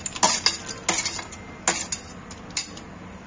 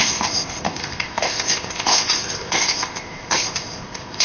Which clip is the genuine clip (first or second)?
first